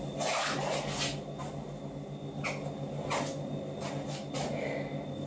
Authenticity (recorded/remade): recorded